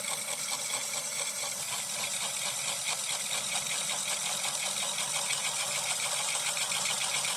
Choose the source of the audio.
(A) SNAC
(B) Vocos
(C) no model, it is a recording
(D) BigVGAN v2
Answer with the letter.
C